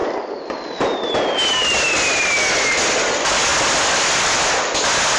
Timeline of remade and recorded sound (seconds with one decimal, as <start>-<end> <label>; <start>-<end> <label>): 0.0-5.2 recorded